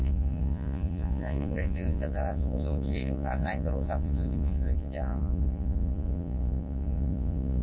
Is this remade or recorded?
remade